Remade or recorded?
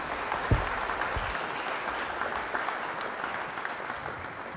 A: recorded